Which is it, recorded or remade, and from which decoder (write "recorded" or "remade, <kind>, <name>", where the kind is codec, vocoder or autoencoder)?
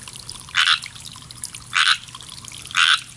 recorded